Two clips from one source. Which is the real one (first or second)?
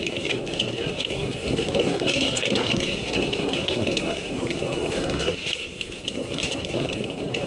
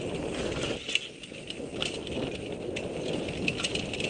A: second